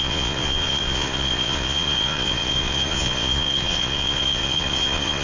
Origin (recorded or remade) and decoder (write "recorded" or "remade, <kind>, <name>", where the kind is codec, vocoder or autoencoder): remade, vocoder, Vocos